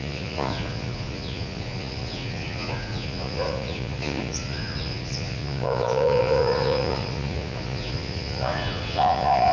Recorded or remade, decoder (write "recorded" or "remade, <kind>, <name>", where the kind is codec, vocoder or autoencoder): remade, vocoder, Vocos